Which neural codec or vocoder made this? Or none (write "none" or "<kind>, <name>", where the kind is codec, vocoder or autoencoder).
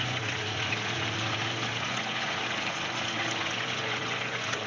vocoder, Vocos